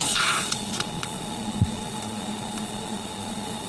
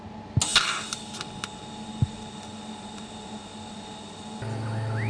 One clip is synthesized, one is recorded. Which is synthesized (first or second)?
first